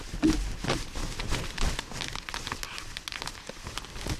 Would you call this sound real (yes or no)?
yes